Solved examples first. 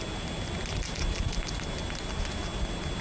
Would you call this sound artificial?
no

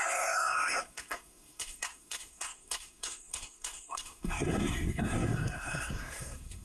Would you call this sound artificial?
yes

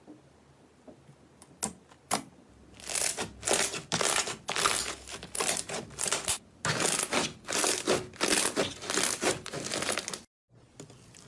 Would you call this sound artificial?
no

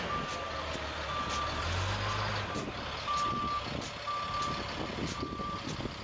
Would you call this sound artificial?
no